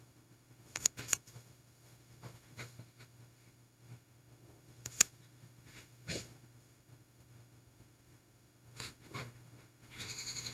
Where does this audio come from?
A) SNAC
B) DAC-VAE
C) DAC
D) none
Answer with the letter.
B